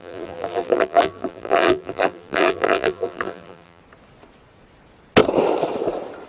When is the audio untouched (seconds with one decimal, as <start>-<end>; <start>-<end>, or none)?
3.8-6.3